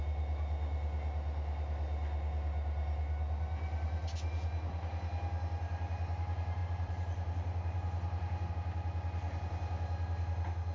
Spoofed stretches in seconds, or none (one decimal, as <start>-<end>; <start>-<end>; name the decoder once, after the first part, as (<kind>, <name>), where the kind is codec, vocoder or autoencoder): 6.6-8.5 (vocoder, BigVGAN v2)